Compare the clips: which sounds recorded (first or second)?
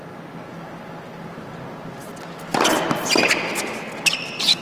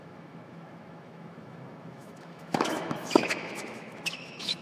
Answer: first